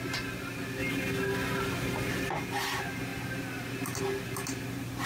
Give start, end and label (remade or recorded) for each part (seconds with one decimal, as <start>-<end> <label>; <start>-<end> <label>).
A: 0.0-5.1 recorded